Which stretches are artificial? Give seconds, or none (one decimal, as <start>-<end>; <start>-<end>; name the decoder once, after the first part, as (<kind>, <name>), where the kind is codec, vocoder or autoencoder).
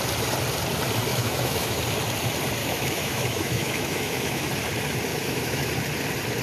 1.1-1.8 (autoencoder, DAC-VAE); 2.6-4.5; 5.1-5.7